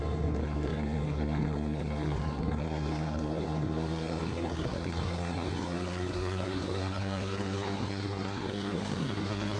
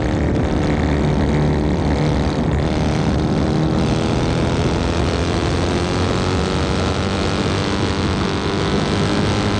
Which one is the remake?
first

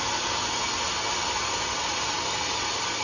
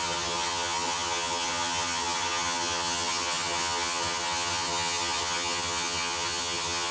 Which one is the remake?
second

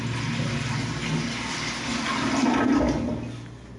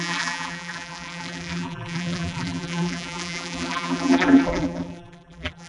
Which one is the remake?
second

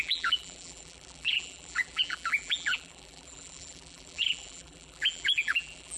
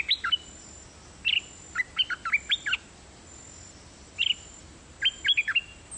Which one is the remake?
first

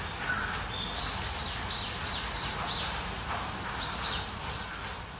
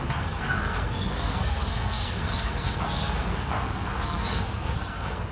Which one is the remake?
second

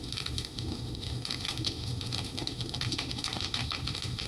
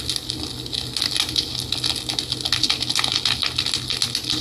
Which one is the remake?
first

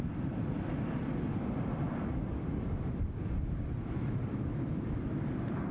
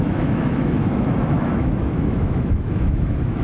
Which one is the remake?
second